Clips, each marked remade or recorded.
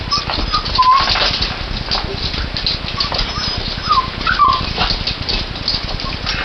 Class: recorded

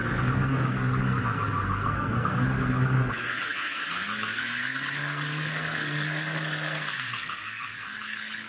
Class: remade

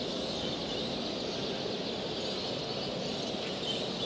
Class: recorded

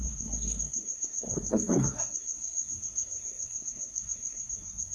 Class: remade